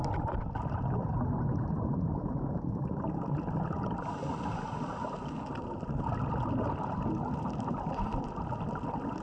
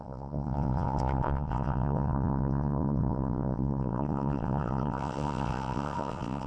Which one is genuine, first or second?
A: first